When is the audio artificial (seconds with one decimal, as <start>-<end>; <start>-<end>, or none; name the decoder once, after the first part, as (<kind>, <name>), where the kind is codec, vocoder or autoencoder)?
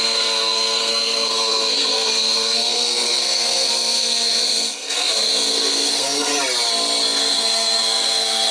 0.0-6.3 (codec, SNAC); 7.2-8.5